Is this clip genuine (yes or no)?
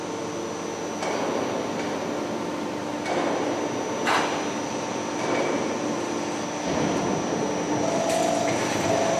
yes